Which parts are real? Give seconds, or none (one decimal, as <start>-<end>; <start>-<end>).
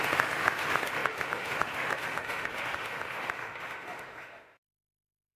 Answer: none